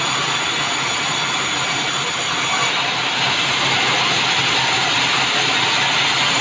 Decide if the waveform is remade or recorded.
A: recorded